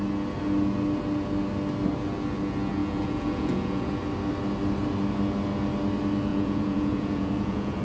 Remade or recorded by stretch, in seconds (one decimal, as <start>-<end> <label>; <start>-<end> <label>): 0.0-2.8 recorded; 2.8-3.9 remade; 3.9-6.3 recorded; 6.3-7.8 remade